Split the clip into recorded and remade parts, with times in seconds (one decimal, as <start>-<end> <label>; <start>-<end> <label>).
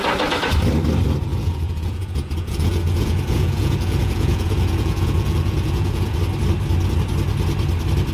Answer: 0.0-1.3 recorded; 1.3-6.2 remade; 6.2-8.1 recorded